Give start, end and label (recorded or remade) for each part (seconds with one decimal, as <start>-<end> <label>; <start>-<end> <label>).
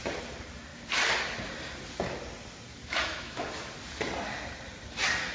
0.0-2.7 recorded; 2.7-3.5 remade; 3.5-5.3 recorded